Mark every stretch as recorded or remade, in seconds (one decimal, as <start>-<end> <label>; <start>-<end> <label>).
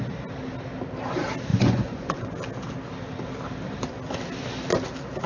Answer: 0.0-1.5 recorded; 1.5-2.3 remade; 2.3-5.3 recorded